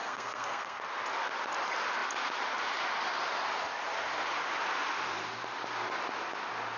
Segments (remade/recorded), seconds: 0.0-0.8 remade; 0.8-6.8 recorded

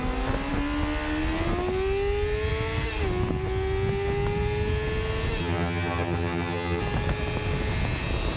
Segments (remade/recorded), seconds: 0.0-5.4 recorded; 5.4-6.8 remade; 6.8-8.4 recorded

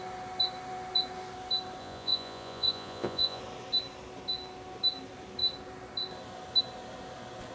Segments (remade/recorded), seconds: 0.0-1.8 recorded; 1.8-3.4 remade; 3.4-7.5 recorded

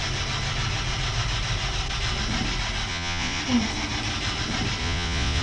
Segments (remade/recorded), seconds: 0.0-2.9 recorded; 2.9-3.4 remade; 3.4-4.8 recorded; 4.8-5.4 remade

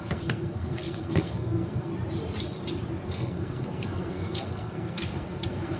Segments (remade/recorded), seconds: 0.0-1.9 remade; 1.9-3.1 recorded; 3.1-5.8 remade